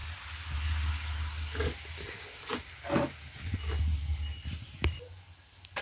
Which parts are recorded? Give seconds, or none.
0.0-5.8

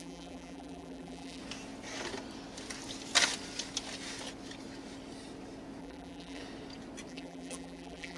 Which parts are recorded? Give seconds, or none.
1.4-5.8; 6.4-7.1

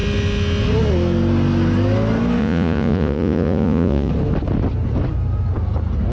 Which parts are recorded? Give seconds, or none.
0.0-2.4; 4.1-6.1

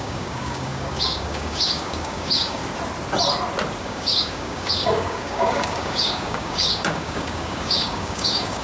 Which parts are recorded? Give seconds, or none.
2.6-3.8

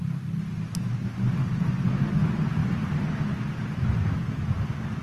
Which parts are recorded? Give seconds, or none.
0.0-1.4; 2.2-2.6; 3.2-5.0

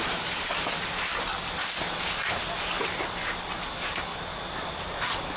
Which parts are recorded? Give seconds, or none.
1.3-2.8; 4.1-4.8

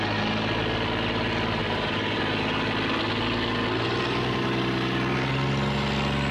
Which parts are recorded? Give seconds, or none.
0.0-1.6; 2.2-6.3